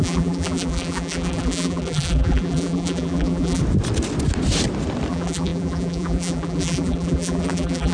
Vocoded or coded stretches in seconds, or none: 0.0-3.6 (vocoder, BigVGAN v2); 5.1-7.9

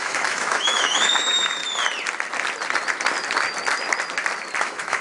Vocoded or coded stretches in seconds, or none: 0.0-1.6 (autoencoder, DAC-VAE); 4.6-5.0

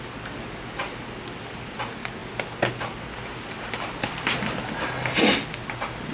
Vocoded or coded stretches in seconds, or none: none

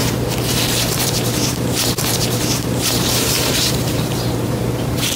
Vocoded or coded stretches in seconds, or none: 0.7-5.2 (vocoder, BigVGAN v2)

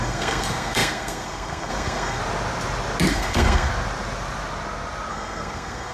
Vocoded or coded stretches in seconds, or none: 0.0-2.2 (codec, SNAC); 3.1-3.7; 5.1-5.9

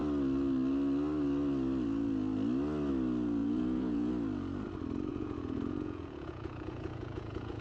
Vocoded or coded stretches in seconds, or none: 3.4-4.1 (vocoder, Vocos); 5.1-7.6

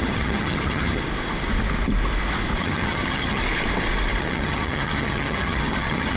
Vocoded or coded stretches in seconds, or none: 0.0-1.0 (vocoder, HiFi-GAN); 2.6-3.4; 4.2-6.2